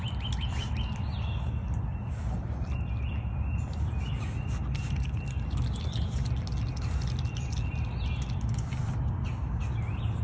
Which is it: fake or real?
real